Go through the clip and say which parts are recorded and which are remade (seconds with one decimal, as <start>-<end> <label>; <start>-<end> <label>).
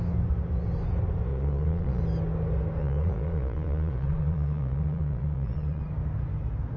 0.0-1.3 recorded; 1.3-2.0 remade; 2.0-2.8 recorded; 2.8-5.8 remade; 5.8-6.8 recorded